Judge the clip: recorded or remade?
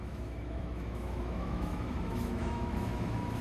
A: remade